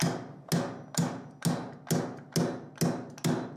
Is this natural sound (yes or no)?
yes